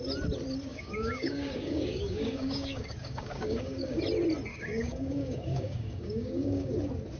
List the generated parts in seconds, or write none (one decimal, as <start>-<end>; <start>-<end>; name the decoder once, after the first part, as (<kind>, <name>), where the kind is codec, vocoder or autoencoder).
0.7-4.0 (codec, DAC); 4.5-6.7